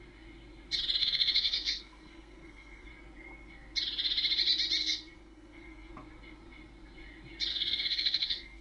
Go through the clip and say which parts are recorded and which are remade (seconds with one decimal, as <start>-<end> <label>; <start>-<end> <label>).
0.0-1.0 recorded; 1.0-2.9 remade; 2.9-4.8 recorded; 4.8-5.9 remade; 5.9-7.5 recorded; 7.5-8.6 remade